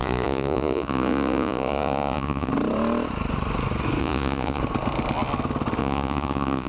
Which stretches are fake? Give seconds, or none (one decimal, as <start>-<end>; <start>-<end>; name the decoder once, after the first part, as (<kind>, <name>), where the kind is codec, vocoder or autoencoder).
0.0-2.5 (vocoder, Vocos); 4.0-4.6; 5.8-6.7

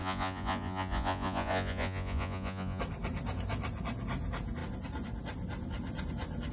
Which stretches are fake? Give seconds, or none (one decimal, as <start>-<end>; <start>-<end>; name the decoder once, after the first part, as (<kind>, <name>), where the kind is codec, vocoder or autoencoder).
0.0-2.8 (vocoder, Vocos)

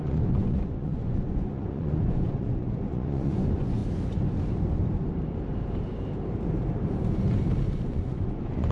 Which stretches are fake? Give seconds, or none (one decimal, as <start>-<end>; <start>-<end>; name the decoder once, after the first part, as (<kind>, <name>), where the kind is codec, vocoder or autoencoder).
0.0-3.8 (vocoder, Vocos); 7.7-8.7

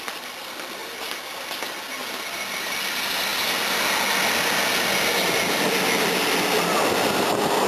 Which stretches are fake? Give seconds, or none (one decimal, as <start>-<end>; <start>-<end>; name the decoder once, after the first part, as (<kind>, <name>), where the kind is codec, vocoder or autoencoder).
none

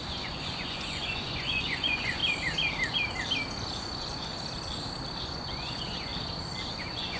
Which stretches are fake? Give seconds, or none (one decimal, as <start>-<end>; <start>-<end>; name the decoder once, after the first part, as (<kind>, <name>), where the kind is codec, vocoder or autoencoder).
0.0-2.2 (vocoder, Vocos); 3.8-4.3; 5.2-6.1; 6.7-7.2

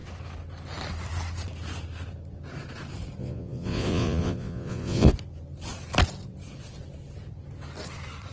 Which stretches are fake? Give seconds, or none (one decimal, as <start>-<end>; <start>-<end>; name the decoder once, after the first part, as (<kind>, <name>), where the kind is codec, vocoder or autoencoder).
3.2-5.1 (vocoder, Vocos)

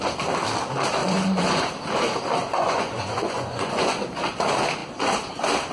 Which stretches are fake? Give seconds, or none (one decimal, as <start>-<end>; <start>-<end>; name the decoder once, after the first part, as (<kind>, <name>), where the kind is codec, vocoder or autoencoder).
1.0-1.7 (vocoder, Vocos); 2.4-3.9

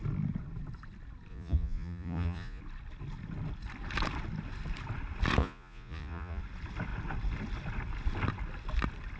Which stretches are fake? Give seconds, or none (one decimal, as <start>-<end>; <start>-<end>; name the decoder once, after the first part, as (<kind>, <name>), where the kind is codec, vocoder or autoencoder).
1.3-2.6 (vocoder, Vocos); 5.4-6.4